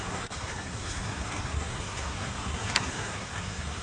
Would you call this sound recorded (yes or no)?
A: no